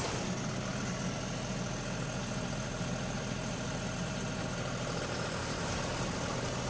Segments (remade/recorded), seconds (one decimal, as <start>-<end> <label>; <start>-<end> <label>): 0.0-5.4 recorded; 5.4-5.9 remade; 5.9-6.7 recorded